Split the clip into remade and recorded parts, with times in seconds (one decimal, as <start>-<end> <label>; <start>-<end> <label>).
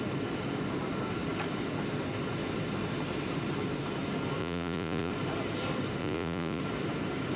0.0-4.4 recorded; 4.4-5.1 remade; 5.1-6.0 recorded; 6.0-6.6 remade; 6.6-7.4 recorded